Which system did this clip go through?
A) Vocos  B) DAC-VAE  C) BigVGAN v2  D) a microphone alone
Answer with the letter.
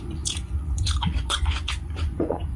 A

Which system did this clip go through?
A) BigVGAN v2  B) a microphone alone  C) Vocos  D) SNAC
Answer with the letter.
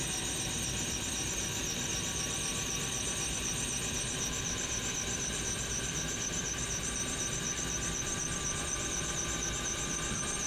A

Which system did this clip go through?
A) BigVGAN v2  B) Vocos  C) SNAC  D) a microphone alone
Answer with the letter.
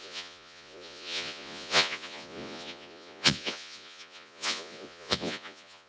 B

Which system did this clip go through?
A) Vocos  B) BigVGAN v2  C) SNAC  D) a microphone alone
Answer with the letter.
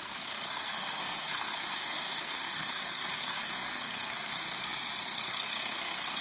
C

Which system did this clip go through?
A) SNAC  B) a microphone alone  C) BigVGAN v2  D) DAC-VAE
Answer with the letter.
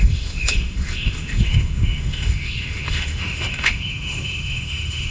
D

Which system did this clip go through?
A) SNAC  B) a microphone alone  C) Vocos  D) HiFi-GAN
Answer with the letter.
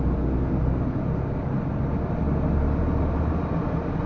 B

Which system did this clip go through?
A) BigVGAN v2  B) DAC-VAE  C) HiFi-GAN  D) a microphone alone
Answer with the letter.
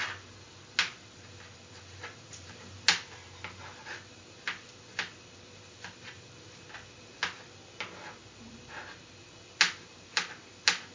D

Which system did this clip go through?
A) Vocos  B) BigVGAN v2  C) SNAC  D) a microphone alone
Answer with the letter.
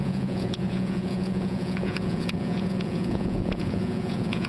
A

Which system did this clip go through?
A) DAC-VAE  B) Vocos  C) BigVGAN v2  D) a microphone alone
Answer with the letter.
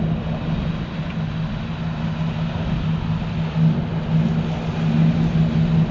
D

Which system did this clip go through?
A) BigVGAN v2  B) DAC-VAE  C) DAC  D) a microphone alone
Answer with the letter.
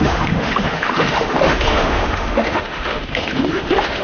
B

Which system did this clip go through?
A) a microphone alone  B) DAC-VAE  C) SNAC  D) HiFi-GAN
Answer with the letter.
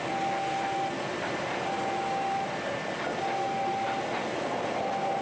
A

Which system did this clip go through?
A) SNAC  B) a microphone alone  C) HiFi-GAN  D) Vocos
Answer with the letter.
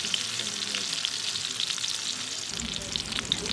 B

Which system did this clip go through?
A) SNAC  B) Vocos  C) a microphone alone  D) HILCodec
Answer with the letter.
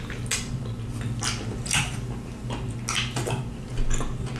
C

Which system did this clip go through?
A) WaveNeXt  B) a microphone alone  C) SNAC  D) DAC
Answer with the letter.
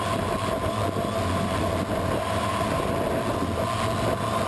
B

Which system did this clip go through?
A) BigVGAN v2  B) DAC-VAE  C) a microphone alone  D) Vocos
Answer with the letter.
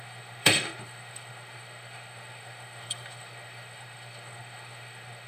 B